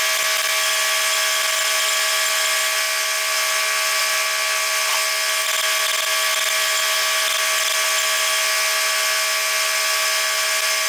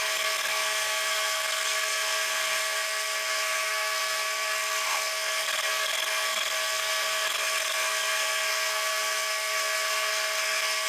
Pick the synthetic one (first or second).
second